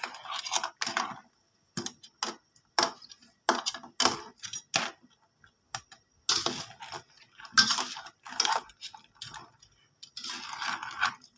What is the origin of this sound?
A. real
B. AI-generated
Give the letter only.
A